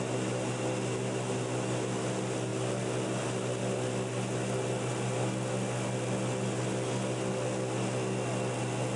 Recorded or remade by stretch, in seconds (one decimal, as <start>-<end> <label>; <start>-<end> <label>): 0.0-9.0 recorded